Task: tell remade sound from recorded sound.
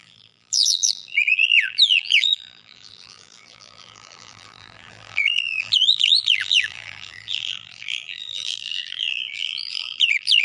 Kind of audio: remade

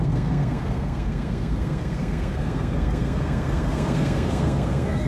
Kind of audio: remade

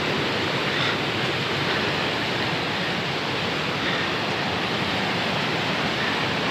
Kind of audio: recorded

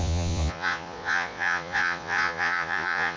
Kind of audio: remade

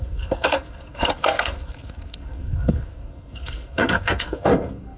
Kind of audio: remade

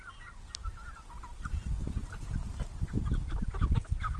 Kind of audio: recorded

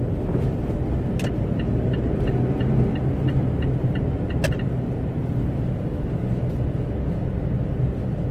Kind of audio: recorded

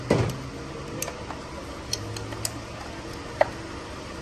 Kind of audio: recorded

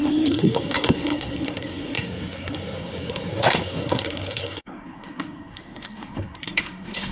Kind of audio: remade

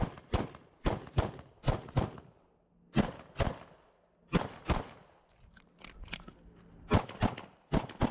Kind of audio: recorded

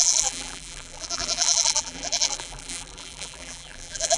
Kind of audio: remade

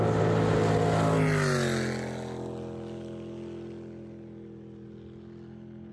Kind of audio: recorded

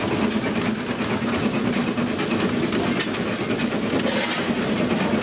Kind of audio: recorded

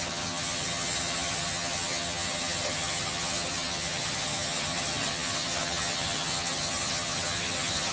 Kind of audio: remade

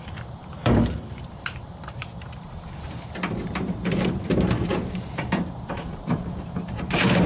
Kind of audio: remade